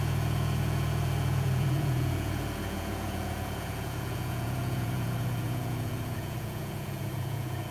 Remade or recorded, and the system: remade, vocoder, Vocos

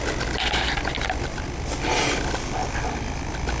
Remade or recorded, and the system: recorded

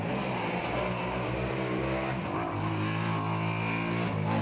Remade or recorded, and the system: recorded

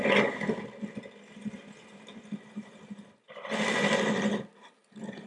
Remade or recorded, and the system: recorded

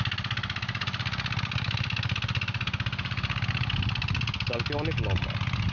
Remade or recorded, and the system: recorded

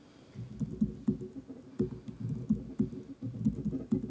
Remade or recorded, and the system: recorded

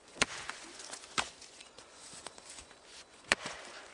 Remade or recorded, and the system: remade, vocoder, Vocos